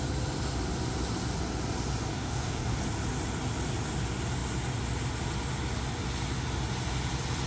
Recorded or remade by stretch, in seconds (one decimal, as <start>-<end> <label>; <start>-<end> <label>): 0.0-2.1 recorded; 2.1-2.8 remade; 2.8-7.5 recorded